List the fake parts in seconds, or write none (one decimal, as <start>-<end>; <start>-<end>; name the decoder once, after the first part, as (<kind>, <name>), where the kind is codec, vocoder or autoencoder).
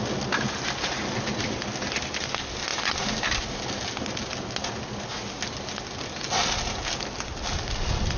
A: none